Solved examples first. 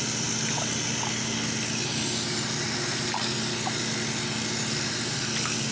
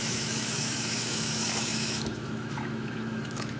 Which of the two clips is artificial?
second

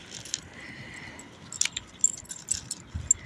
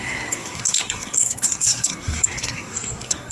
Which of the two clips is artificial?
second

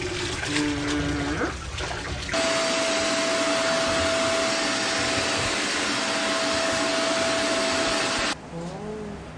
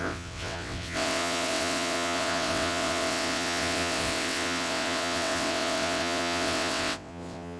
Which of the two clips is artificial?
second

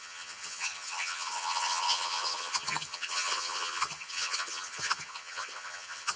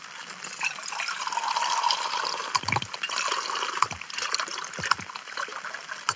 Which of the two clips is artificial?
first